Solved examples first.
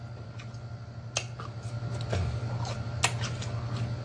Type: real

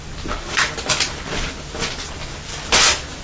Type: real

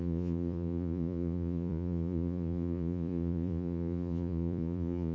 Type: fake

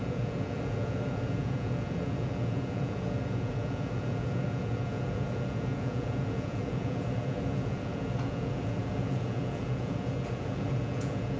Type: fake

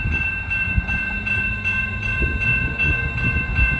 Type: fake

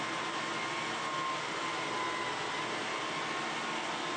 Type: real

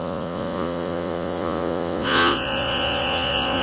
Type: fake